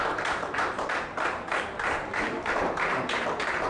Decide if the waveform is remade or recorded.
remade